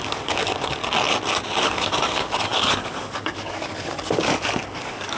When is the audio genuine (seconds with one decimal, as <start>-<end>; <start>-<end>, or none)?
0.8-1.6